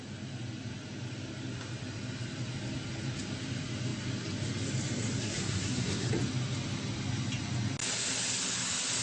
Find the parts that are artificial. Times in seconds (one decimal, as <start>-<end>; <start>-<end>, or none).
5.2-6.1